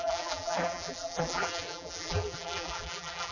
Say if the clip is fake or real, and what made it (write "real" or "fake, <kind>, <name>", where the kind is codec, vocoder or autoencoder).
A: fake, vocoder, BigVGAN v2